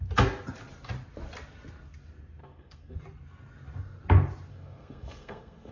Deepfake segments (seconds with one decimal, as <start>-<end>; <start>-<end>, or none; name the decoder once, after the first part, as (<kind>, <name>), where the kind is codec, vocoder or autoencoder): 2.4-3.0 (codec, SNAC); 4.5-5.7